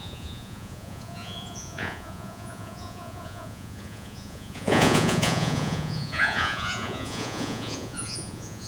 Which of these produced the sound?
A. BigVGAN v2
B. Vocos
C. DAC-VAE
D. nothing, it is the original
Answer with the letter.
B